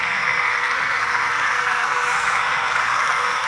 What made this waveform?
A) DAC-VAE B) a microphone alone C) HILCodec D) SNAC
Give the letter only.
D